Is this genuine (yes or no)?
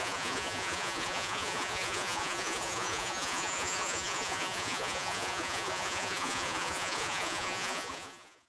no